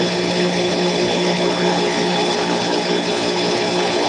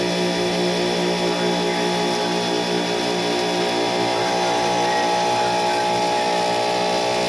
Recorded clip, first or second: second